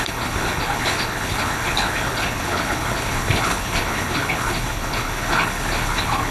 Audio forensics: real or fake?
fake